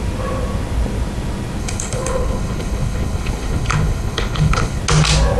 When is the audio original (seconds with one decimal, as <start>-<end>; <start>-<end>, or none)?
0.0-1.6; 4.8-5.4